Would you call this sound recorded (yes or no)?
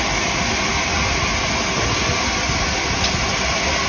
yes